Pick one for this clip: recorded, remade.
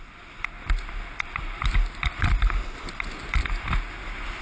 recorded